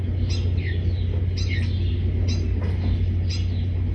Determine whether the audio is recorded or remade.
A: recorded